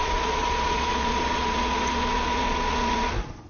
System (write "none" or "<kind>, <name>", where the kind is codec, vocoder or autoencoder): vocoder, Vocos